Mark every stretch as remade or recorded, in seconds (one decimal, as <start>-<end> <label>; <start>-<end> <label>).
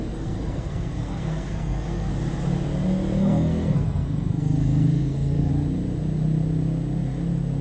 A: 0.0-2.1 remade; 2.1-3.2 recorded; 3.2-5.5 remade; 5.5-7.6 recorded